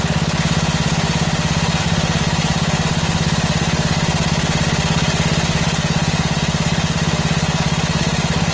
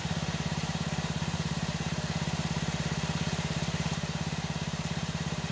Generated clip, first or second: second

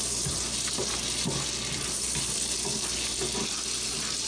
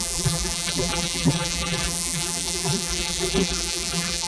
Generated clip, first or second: second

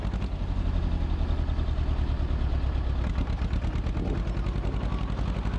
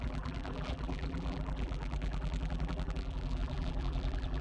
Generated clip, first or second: second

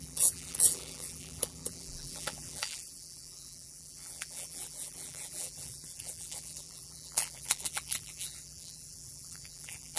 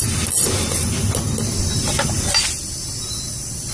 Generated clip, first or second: first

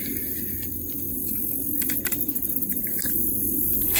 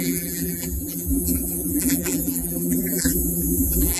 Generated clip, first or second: second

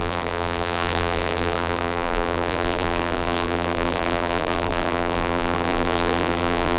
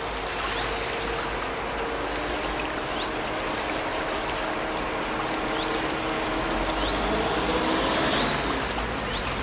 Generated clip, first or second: first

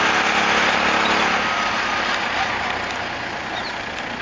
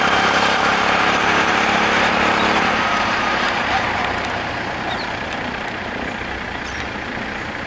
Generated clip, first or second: second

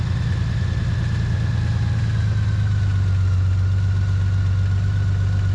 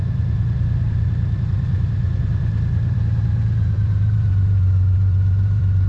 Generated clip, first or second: second